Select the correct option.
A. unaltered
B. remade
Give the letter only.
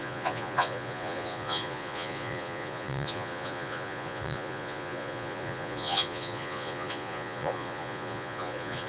B